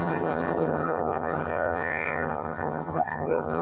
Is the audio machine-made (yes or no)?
yes